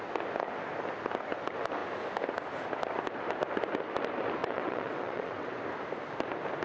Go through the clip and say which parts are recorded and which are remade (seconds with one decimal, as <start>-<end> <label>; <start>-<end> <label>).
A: 0.0-4.4 recorded; 4.4-5.6 remade; 5.6-6.6 recorded